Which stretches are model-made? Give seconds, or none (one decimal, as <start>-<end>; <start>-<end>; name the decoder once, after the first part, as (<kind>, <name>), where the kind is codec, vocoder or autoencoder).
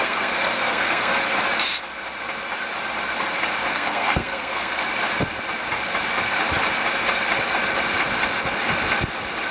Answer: 0.0-1.1 (codec, SNAC); 3.7-4.8